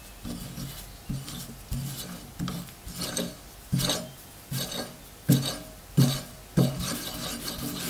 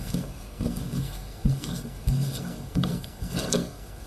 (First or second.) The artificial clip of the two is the second